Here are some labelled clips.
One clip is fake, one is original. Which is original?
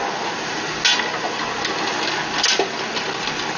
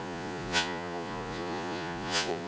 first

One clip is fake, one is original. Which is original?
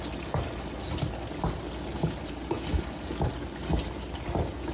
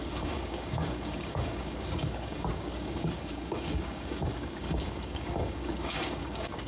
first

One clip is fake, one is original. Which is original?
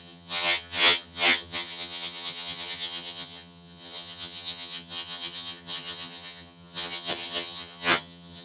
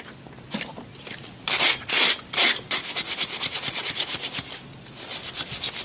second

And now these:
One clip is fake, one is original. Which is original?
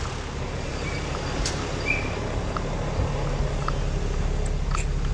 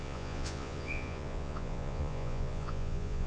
first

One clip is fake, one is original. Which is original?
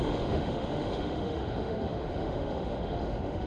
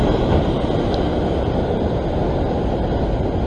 second